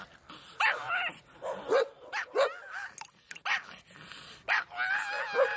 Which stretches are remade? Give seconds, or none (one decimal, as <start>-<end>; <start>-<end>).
none

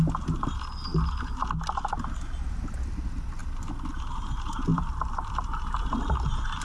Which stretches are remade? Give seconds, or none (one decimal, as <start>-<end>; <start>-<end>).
4.7-5.8

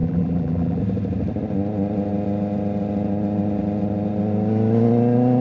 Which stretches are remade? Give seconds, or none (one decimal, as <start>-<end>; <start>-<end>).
0.0-0.8